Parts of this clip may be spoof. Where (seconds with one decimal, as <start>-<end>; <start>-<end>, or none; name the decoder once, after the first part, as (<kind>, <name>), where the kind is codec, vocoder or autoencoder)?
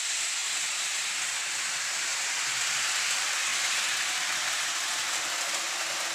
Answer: none